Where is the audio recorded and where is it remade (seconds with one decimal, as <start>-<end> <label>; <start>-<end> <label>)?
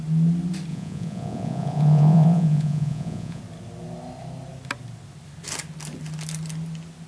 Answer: 0.0-0.7 recorded; 0.7-3.4 remade; 3.4-7.1 recorded